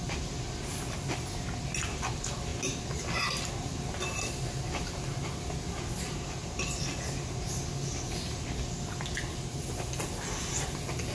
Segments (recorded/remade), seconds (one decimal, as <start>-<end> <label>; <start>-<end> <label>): 0.0-11.1 recorded